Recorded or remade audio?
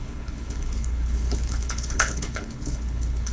remade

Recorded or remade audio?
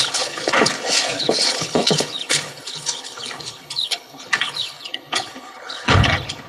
remade